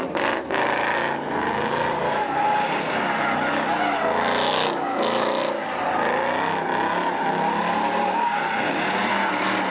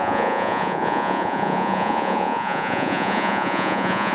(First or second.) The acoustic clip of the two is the first